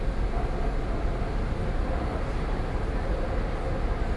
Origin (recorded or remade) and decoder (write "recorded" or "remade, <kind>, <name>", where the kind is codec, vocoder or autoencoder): recorded